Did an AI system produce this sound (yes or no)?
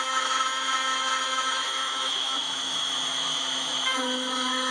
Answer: yes